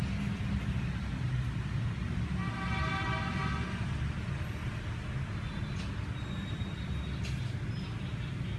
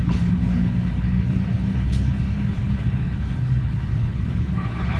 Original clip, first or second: first